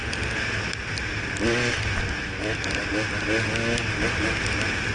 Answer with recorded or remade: recorded